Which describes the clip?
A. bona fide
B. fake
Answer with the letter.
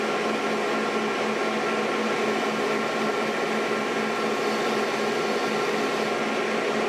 A